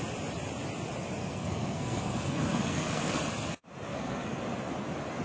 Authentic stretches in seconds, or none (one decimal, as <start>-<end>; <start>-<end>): 0.0-1.2; 3.2-3.9; 4.4-5.2